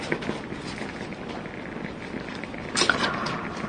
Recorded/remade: recorded